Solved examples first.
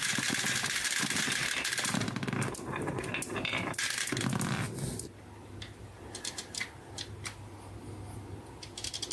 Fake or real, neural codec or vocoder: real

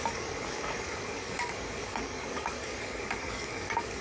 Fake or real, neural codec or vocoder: fake, codec, DAC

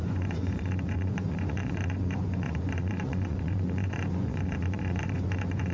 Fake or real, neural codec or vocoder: fake, vocoder, Vocos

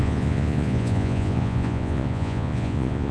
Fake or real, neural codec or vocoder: fake, vocoder, Vocos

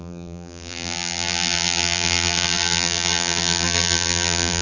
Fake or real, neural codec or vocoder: fake, vocoder, BigVGAN v2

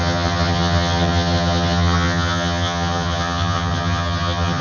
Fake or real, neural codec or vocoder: fake, vocoder, HiFi-GAN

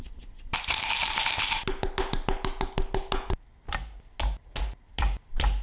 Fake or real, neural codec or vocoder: real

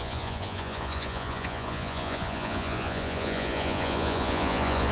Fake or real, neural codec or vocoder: fake, vocoder, Vocos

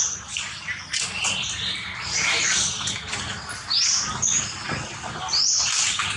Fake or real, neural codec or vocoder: real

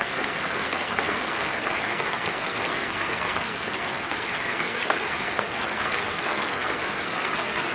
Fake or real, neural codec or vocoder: fake, codec, SNAC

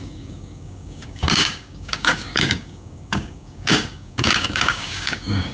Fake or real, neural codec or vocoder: fake, codec, DAC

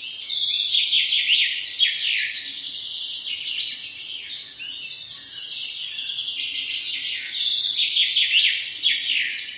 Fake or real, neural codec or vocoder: real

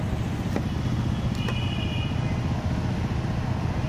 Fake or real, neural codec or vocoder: real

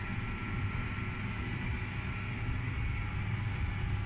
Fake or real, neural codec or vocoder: real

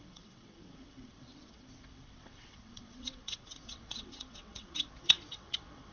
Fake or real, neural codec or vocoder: fake, vocoder, WaveNeXt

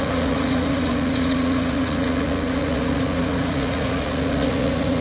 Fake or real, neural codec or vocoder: fake, vocoder, Vocos